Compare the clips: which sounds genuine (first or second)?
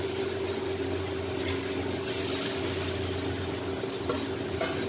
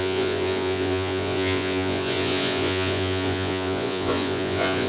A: first